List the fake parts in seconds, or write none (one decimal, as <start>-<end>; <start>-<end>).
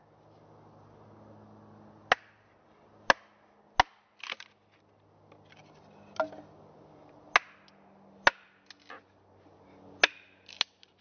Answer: none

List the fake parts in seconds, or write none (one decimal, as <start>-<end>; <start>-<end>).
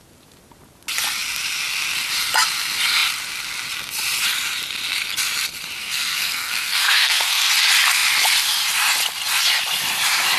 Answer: 5.8-7.5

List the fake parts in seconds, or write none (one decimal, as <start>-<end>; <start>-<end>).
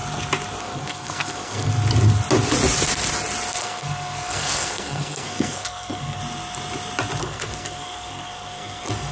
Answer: 0.6-1.7; 3.5-6.2; 7.2-9.1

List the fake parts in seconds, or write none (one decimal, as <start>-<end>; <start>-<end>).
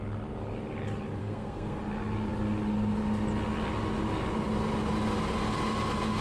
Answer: 1.2-1.8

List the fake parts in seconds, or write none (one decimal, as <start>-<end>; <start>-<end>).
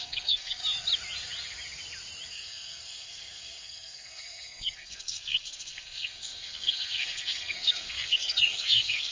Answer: 0.0-0.6; 2.3-9.1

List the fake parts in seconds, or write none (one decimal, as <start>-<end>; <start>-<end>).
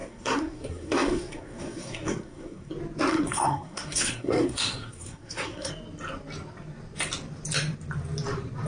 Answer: 0.0-2.7; 3.1-5.7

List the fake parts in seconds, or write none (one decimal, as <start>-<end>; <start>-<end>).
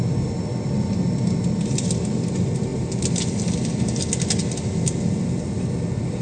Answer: none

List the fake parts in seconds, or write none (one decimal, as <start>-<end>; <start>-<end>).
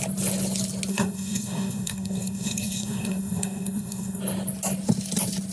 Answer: 0.9-4.2